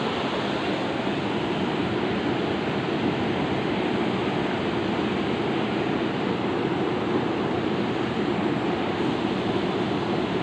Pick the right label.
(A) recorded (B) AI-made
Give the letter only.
A